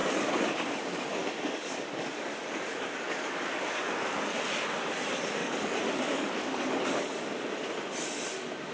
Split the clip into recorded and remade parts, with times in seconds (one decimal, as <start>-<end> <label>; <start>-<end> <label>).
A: 0.0-4.2 remade; 4.2-5.4 recorded; 5.4-7.2 remade; 7.2-8.7 recorded